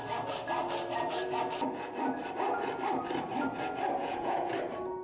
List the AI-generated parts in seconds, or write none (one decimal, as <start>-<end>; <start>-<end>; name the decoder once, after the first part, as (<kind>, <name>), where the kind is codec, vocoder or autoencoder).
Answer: 4.0-4.5 (vocoder, Vocos)